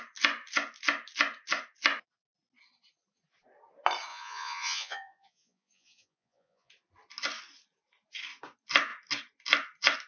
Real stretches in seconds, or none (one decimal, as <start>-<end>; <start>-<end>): 0.0-4.1; 6.7-10.1